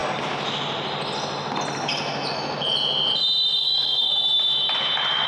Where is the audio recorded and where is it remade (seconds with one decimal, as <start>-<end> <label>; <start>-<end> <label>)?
0.0-3.6 recorded; 3.6-4.1 remade; 4.1-5.3 recorded